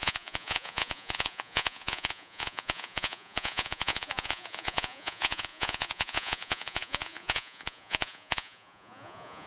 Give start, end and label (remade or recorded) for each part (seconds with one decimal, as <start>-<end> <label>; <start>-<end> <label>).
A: 0.0-9.5 remade